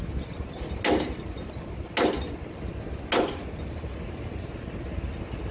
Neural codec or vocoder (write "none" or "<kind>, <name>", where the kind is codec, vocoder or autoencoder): none